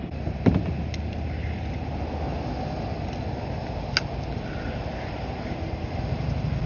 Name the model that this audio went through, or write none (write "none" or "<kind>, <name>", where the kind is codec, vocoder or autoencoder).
none